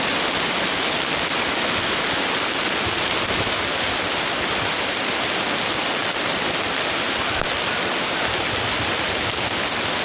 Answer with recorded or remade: recorded